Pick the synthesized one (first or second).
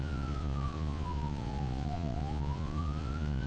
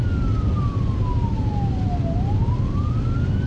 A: first